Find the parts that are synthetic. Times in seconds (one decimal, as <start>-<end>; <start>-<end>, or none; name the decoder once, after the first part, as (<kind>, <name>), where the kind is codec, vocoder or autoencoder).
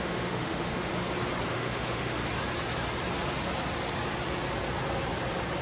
0.0-0.9 (autoencoder, DAC-VAE); 1.5-2.2